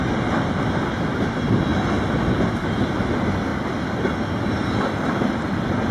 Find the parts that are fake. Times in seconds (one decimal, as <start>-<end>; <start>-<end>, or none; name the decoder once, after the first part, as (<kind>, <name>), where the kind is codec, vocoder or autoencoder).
none